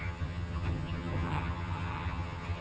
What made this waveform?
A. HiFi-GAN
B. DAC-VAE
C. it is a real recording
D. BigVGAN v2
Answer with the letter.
A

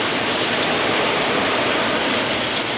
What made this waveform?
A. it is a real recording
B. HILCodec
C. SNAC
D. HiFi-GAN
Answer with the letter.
A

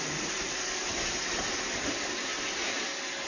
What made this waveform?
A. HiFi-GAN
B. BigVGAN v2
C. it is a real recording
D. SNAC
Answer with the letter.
C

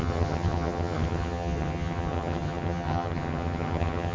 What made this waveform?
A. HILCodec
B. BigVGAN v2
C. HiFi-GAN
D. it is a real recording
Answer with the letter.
C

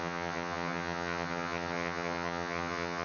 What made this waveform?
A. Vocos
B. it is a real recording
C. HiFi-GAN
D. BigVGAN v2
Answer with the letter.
C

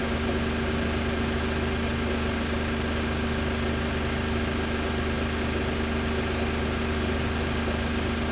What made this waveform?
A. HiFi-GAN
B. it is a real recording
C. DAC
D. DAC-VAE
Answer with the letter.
B